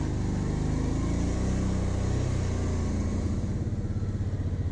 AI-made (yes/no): no